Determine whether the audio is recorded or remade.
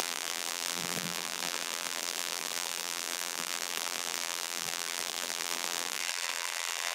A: remade